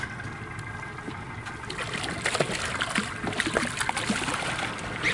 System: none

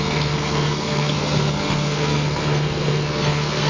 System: codec, SNAC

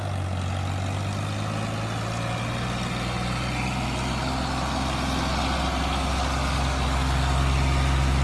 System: none